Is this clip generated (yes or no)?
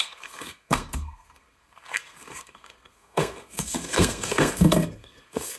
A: yes